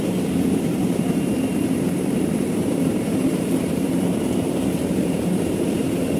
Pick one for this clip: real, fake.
fake